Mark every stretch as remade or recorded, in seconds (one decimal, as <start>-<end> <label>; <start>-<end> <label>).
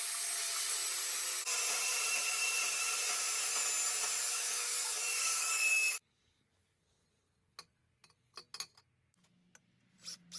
0.0-4.2 recorded; 4.2-6.8 remade; 6.8-10.4 recorded